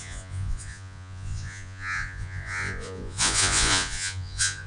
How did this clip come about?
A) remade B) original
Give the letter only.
A